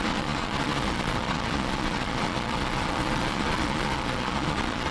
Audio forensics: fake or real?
fake